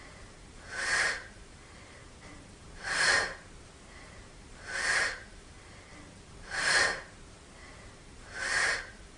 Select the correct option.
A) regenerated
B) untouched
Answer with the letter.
A